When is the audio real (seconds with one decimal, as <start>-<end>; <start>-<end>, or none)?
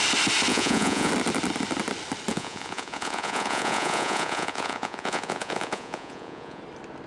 0.0-0.5; 1.1-2.3; 6.6-7.1